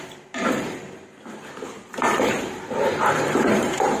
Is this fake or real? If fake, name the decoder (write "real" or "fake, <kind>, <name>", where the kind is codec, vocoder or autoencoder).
fake, vocoder, BigVGAN v2